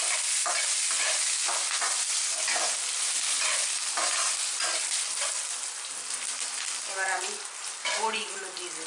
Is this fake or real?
real